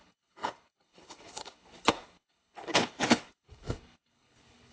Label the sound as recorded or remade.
remade